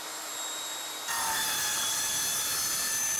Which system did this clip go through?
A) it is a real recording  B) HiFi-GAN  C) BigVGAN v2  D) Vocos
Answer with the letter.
C